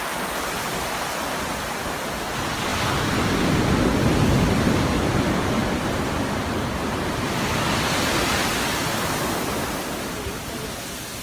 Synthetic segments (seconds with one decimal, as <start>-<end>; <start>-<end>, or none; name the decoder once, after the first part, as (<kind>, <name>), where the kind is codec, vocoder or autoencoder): none